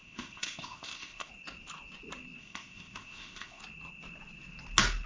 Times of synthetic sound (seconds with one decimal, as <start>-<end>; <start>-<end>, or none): 0.0-1.3; 2.4-3.6